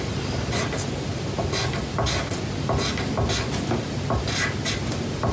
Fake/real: real